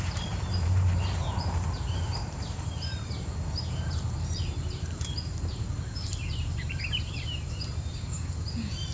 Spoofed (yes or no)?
yes